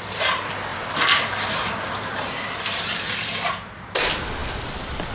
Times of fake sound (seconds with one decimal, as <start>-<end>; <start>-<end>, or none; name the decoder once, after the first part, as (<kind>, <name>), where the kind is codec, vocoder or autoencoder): 0.7-3.8 (vocoder, BigVGAN v2); 4.4-5.1